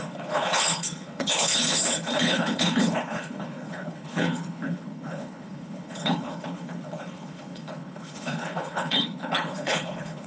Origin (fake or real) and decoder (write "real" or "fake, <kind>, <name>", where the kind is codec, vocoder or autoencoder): fake, codec, HILCodec